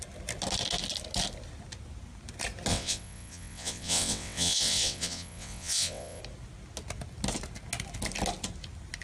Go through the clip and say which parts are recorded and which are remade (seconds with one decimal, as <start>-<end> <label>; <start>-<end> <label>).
0.0-2.7 recorded; 2.7-6.2 remade; 6.2-9.0 recorded